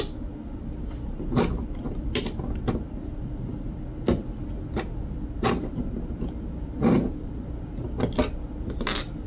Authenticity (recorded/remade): recorded